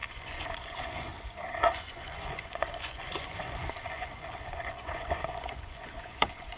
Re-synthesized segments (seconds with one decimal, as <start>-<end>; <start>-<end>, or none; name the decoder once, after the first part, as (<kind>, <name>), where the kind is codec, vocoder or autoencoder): 0.0-1.1 (vocoder, Vocos); 1.6-6.6